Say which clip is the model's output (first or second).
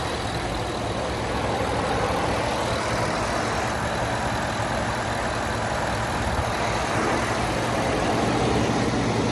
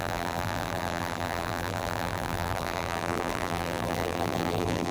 second